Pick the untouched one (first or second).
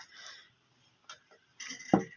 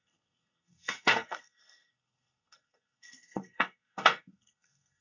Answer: first